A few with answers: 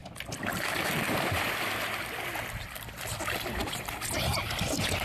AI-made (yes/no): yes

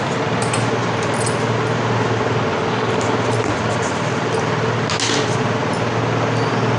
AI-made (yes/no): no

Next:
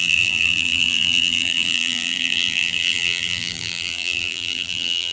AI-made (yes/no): yes